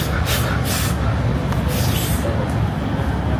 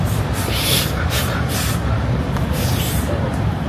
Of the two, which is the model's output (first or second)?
second